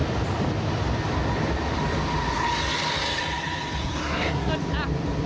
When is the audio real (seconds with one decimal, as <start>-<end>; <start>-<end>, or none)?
0.0-3.8; 4.5-5.3